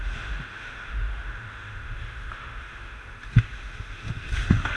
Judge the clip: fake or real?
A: fake